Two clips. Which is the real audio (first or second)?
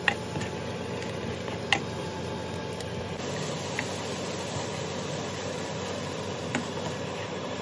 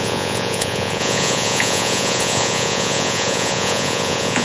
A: first